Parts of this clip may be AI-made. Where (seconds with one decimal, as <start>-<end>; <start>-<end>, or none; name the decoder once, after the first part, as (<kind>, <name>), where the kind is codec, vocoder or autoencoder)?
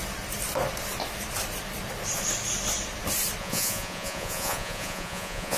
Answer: 3.4-5.6 (vocoder, Vocos)